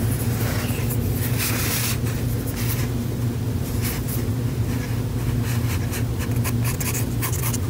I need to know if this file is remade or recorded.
recorded